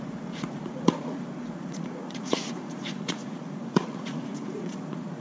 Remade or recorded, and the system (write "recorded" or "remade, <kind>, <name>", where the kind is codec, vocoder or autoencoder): remade, vocoder, Vocos